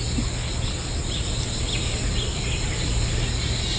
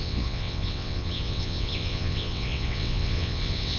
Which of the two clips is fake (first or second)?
second